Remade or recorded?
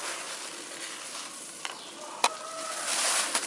recorded